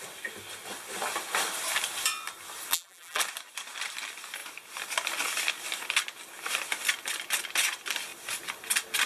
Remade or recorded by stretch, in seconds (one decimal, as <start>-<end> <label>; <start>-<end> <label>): 0.0-2.7 recorded; 2.7-3.2 remade; 3.2-9.1 recorded